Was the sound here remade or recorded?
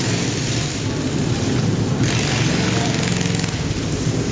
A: recorded